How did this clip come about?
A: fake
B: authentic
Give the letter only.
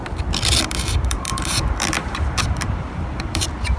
A